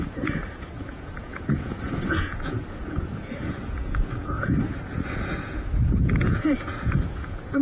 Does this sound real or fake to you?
fake